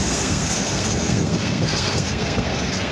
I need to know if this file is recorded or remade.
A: remade